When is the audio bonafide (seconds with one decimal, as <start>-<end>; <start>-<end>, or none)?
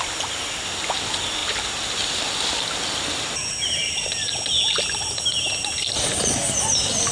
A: 0.0-7.1